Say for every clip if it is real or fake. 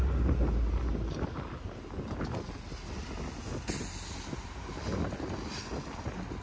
real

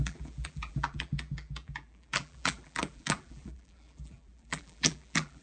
fake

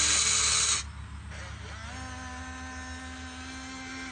real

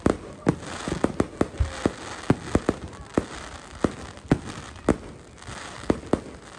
real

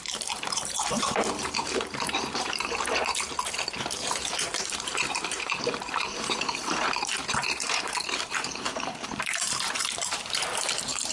fake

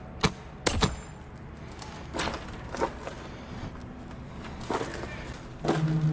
real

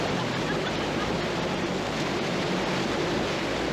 real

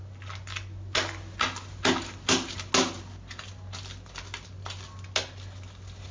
real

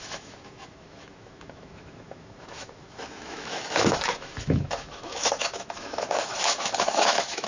fake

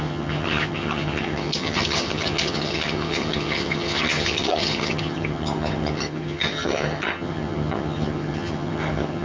fake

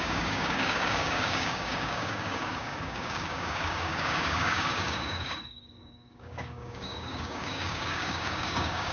fake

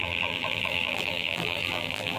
fake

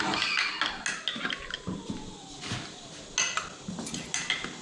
real